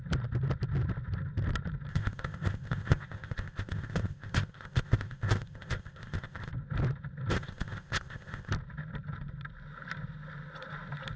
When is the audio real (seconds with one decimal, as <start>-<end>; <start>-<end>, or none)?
0.0-1.9; 6.5-7.3; 8.5-11.2